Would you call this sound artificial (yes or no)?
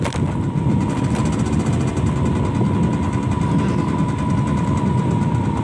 no